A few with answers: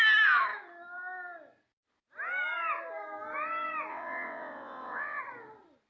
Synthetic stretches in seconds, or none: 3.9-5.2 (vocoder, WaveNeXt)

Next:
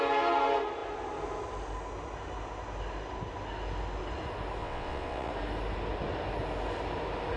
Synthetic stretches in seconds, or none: 4.6-5.3 (vocoder, WaveNeXt)